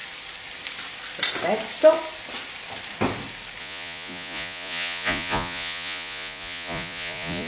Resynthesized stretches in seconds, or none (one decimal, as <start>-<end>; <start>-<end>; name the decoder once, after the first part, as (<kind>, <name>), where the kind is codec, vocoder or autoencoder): 3.6-7.5 (vocoder, Vocos)